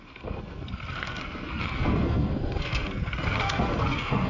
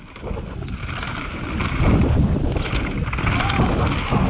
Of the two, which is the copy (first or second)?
first